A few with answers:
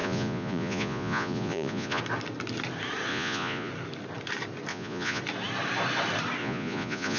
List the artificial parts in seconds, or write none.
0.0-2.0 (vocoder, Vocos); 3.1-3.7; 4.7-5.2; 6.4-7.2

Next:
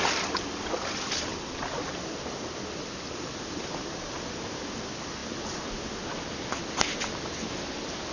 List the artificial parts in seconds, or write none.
none

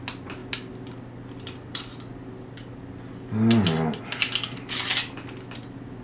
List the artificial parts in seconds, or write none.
none